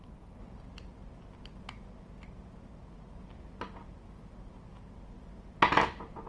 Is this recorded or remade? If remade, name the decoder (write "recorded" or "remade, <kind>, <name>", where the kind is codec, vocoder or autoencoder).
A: recorded